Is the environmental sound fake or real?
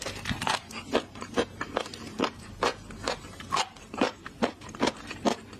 fake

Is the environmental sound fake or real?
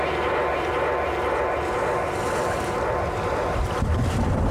fake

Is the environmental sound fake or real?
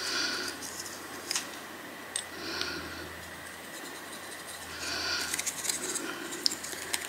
real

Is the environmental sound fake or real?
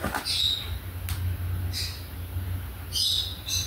real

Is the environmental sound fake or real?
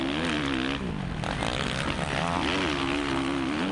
real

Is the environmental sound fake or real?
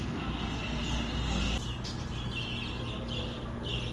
real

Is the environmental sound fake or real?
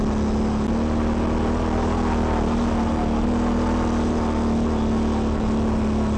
real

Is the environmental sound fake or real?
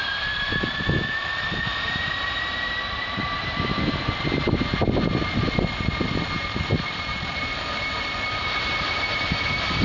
fake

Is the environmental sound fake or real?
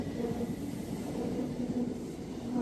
real